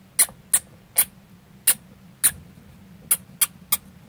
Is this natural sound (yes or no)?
yes